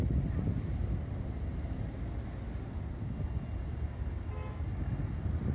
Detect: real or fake real